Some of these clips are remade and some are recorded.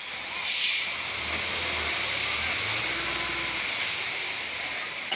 recorded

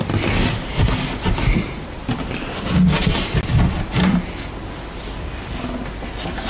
recorded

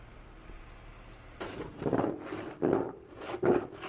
recorded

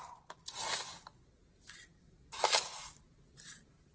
recorded